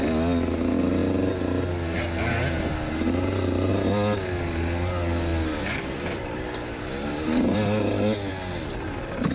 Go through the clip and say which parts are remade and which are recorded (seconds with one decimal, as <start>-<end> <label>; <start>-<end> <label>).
0.0-5.3 recorded; 5.3-8.3 remade; 8.3-9.3 recorded